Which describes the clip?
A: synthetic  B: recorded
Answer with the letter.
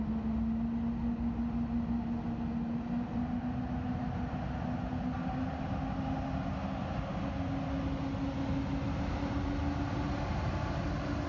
B